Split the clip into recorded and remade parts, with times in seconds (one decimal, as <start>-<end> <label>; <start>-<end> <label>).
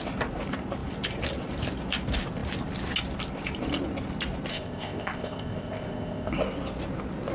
0.0-4.5 recorded; 4.5-6.3 remade; 6.3-7.3 recorded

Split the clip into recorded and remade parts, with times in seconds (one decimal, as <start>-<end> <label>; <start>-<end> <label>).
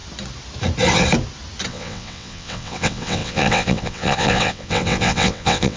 0.0-1.7 recorded; 1.7-5.8 remade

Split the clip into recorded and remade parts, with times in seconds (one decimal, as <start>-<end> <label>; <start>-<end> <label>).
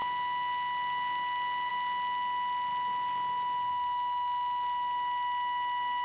0.0-6.0 recorded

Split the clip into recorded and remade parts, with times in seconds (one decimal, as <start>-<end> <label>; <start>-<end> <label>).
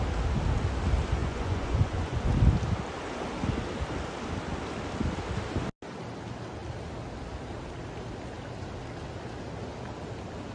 0.0-1.2 recorded; 1.2-2.3 remade; 2.3-10.5 recorded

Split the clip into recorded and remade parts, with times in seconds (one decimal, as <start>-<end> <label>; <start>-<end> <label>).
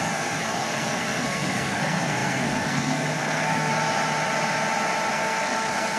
0.0-3.7 remade; 3.7-5.1 recorded; 5.1-6.0 remade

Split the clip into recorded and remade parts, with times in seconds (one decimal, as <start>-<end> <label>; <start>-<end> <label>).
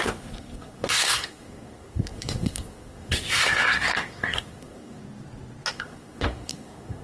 0.0-5.0 remade; 5.0-5.7 recorded; 5.7-7.0 remade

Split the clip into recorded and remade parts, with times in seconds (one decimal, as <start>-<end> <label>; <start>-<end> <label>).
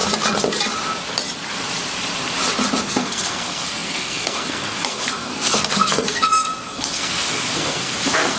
0.0-2.8 recorded; 2.8-8.4 remade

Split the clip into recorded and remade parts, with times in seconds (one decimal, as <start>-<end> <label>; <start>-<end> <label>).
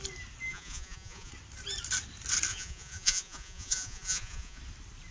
0.0-0.5 recorded; 0.5-1.3 remade; 1.3-2.5 recorded; 2.5-4.6 remade; 4.6-5.1 recorded